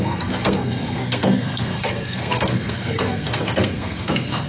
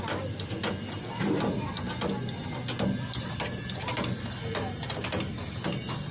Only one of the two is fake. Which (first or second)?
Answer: first